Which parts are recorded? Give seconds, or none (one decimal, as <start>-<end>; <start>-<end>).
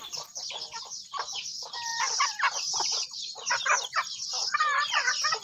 0.0-5.4